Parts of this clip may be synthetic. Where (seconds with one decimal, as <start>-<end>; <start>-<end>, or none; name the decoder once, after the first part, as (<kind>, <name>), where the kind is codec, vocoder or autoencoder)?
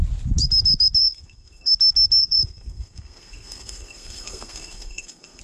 1.0-1.7 (codec, SNAC); 2.2-5.4